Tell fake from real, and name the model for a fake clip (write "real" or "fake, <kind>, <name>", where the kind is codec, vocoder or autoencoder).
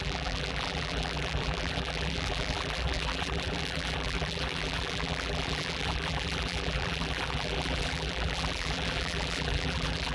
fake, vocoder, BigVGAN v2